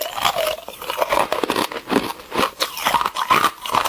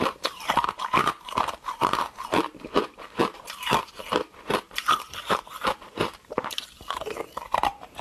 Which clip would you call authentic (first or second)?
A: first